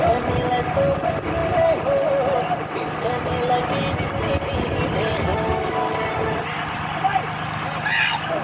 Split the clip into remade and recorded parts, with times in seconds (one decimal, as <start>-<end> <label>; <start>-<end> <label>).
0.0-8.4 recorded